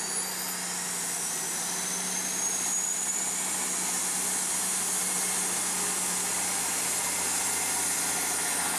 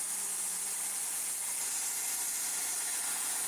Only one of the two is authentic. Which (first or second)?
first